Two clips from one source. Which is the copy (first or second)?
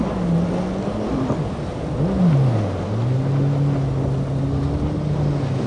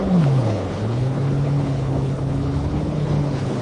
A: second